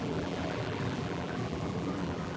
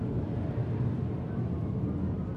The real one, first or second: second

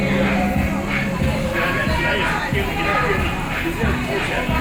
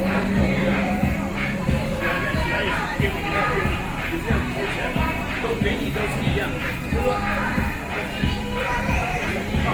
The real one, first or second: first